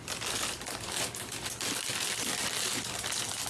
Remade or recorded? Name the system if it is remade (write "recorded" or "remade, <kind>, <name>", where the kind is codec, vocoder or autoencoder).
recorded